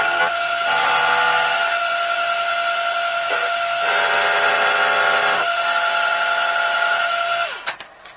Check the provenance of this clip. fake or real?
real